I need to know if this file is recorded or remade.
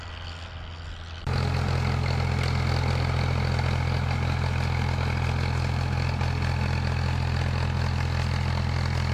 recorded